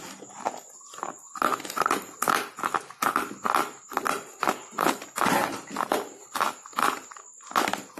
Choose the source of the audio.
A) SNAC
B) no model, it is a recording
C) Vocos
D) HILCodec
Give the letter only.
B